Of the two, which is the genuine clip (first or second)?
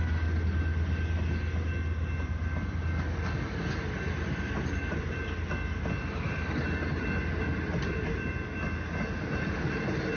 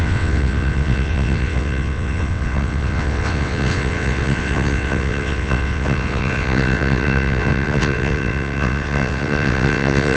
first